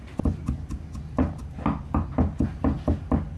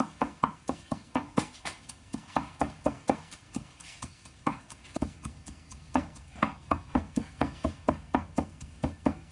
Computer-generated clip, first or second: second